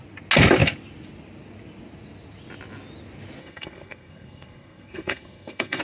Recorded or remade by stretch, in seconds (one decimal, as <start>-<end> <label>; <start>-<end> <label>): 0.0-3.4 recorded; 3.4-5.8 remade